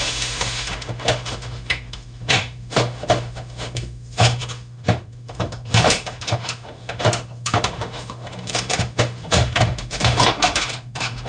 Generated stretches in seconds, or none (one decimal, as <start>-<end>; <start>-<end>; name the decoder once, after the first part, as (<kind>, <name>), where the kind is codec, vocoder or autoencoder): 0.0-11.3 (autoencoder, DAC-VAE)